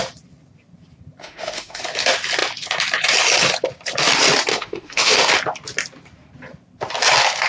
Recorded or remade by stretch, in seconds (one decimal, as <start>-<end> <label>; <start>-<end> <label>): 0.0-1.2 recorded; 1.2-1.8 remade; 1.8-4.5 recorded; 4.5-5.3 remade; 5.3-7.5 recorded